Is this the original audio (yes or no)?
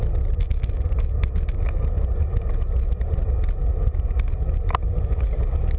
yes